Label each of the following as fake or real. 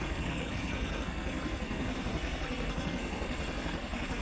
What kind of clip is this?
fake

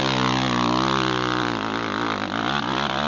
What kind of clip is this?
real